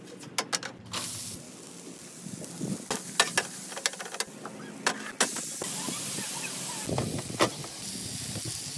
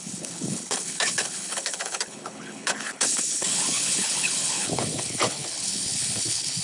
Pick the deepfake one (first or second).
second